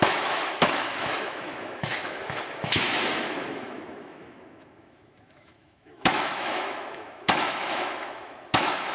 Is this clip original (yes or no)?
no